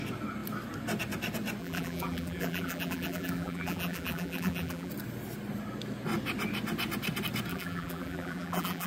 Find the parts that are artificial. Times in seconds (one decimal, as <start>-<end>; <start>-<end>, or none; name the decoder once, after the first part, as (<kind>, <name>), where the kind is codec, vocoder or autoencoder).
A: 1.6-4.9 (vocoder, BigVGAN v2); 7.5-8.9

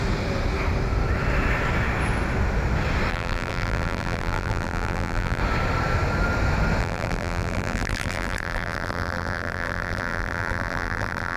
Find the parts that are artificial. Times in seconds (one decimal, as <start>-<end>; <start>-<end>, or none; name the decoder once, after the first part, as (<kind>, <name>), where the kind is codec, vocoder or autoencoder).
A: 3.1-5.4 (vocoder, BigVGAN v2); 6.8-11.4